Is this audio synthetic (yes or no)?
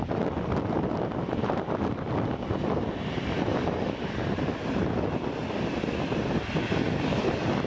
no